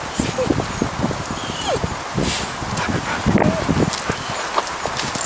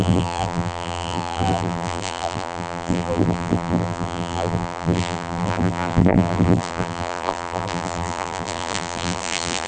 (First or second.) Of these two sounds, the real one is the first